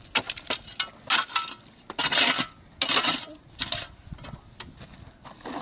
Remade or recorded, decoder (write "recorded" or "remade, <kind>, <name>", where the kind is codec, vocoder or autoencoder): recorded